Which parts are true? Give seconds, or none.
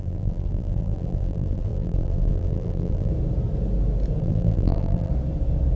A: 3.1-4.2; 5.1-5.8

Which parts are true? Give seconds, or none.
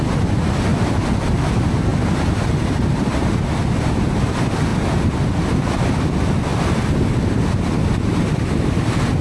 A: 0.0-1.9; 4.2-9.2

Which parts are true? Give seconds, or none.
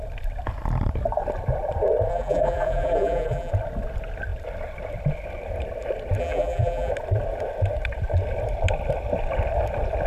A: 0.0-2.1; 3.5-6.2; 6.9-10.1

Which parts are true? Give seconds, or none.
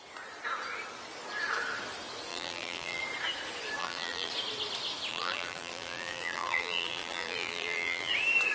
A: 0.0-2.3; 3.0-3.8; 4.3-5.1; 8.1-8.5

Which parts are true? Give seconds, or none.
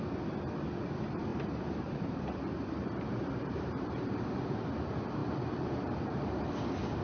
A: 0.0-1.3; 4.7-5.2; 6.6-7.0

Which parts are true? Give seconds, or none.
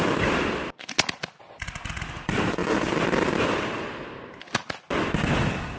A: 0.0-2.6; 4.8-5.8